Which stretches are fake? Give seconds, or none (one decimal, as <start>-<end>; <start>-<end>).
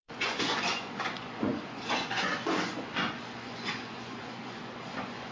0.0-5.3